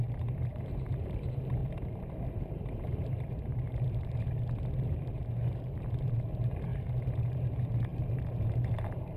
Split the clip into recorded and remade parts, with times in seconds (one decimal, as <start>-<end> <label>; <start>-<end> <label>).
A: 0.0-1.6 remade; 1.6-2.3 recorded; 2.3-6.7 remade; 6.7-7.4 recorded; 7.4-9.2 remade